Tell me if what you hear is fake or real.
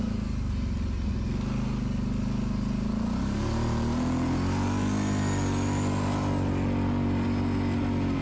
real